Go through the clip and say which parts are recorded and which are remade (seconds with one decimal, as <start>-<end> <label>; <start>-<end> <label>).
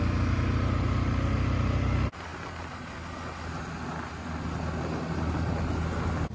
0.0-6.3 recorded